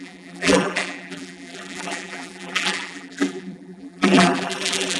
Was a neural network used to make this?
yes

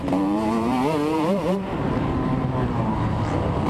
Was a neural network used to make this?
yes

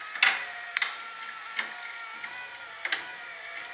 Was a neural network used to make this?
no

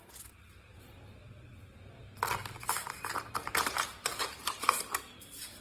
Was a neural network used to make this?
no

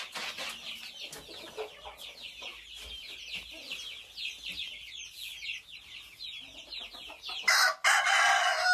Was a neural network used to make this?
no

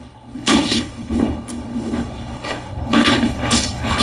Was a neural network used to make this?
yes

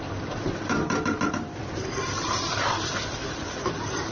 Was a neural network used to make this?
yes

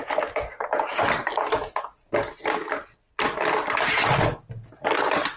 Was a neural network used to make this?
no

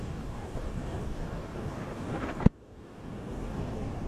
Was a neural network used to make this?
yes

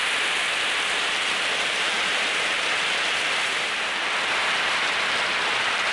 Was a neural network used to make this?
yes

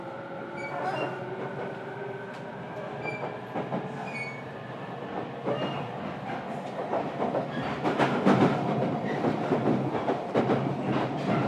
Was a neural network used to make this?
no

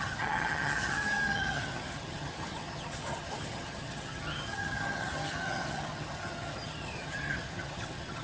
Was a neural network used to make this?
yes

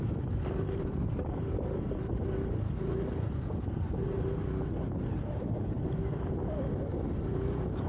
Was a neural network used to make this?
no